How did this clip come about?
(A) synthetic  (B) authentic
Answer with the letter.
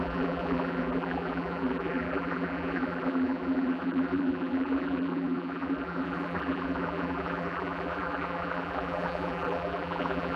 A